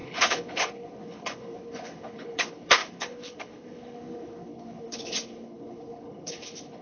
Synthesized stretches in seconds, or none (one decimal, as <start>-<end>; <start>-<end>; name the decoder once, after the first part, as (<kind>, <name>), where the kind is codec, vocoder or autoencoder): 0.0-6.8 (codec, HILCodec)